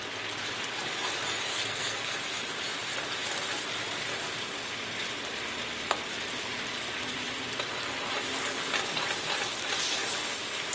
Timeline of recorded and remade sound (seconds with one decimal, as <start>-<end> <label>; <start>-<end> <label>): 0.0-1.5 recorded; 1.5-2.2 remade; 2.2-10.7 recorded